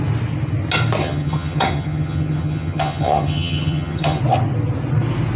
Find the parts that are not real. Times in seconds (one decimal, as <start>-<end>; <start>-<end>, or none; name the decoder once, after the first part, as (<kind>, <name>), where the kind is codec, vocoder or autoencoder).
1.0-4.2 (vocoder, HiFi-GAN)